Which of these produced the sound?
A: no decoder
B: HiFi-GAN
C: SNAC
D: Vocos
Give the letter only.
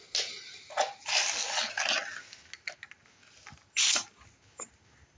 A